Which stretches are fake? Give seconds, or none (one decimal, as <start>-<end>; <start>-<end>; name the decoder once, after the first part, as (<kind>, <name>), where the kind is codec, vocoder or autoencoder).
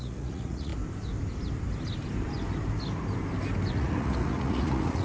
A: 0.0-0.7 (vocoder, Vocos); 3.7-5.0